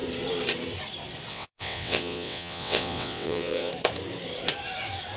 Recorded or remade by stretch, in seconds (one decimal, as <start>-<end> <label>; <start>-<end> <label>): 0.0-1.3 recorded; 1.3-3.7 remade; 3.7-5.2 recorded